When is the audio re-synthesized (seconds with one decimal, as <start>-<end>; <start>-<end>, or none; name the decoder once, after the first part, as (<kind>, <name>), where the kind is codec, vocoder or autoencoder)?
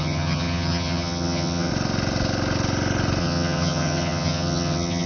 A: 0.0-1.7 (vocoder, HiFi-GAN); 3.2-5.1